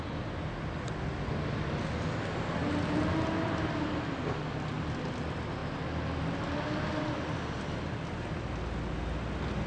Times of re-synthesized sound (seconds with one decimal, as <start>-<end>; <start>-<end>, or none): none